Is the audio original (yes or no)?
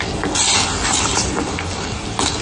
yes